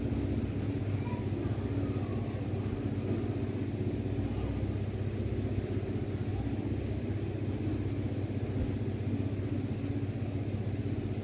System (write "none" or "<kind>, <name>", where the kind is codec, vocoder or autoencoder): none